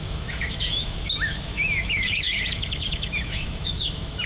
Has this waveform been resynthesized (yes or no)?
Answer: yes